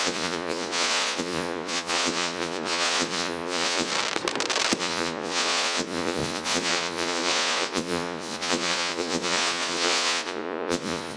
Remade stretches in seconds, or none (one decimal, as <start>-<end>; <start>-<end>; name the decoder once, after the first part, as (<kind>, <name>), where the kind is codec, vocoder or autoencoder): 0.0-3.9 (vocoder, Vocos); 4.8-11.2